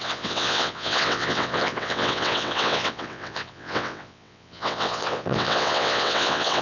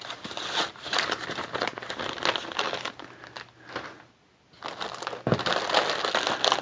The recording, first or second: second